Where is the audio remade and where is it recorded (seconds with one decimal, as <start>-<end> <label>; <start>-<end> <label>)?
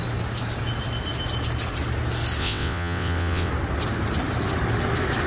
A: 0.0-2.4 recorded; 2.4-3.5 remade; 3.5-5.3 recorded